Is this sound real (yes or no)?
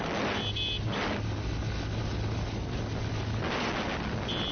yes